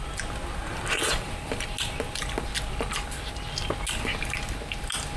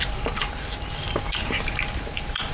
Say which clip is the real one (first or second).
first